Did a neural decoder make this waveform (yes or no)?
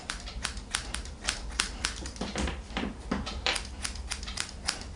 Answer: yes